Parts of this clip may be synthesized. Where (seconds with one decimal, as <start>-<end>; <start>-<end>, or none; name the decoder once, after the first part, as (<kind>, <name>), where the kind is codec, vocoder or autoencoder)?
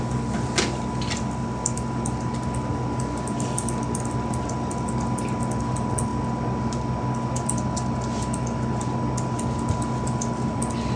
none